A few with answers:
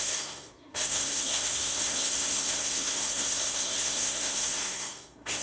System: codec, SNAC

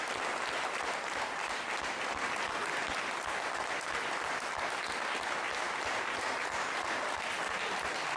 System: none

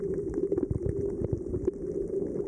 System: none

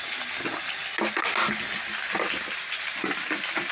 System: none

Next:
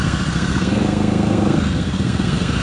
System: codec, SNAC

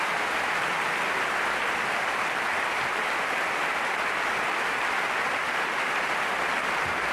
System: none